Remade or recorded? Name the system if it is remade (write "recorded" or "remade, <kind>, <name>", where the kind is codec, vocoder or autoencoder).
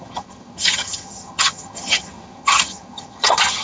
remade, vocoder, HiFi-GAN